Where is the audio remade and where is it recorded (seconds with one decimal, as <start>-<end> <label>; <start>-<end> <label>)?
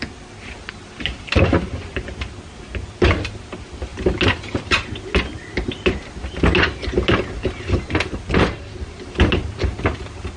0.0-10.4 recorded